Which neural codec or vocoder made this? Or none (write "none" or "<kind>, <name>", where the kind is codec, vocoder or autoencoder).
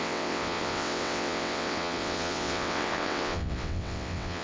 vocoder, WaveNeXt